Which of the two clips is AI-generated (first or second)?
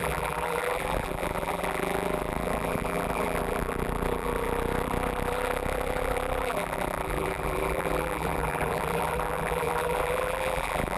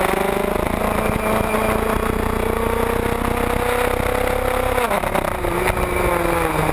first